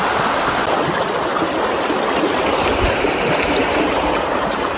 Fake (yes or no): no